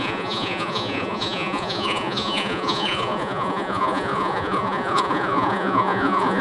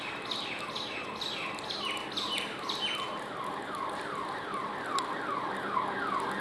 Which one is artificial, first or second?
first